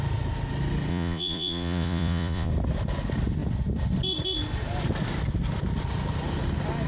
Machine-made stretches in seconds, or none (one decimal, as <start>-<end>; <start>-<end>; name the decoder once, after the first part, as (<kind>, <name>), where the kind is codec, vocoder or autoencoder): 0.9-2.5 (vocoder, Vocos)